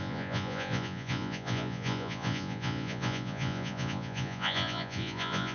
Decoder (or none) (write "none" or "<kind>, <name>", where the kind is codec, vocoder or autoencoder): vocoder, Vocos